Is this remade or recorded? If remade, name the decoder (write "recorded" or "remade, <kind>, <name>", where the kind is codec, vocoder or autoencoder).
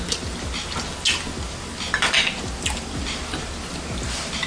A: recorded